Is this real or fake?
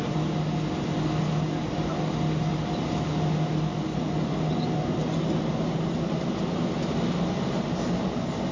real